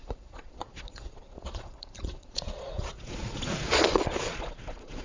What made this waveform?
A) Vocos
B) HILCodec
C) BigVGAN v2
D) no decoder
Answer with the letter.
A